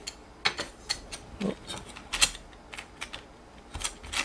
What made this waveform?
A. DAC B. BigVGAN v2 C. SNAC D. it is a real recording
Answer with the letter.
D